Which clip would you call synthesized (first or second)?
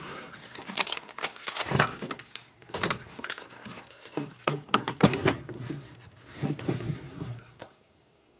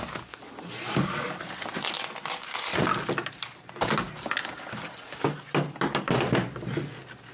first